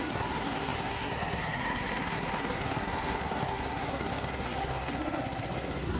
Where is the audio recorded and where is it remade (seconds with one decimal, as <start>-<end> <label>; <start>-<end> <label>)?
0.0-6.0 remade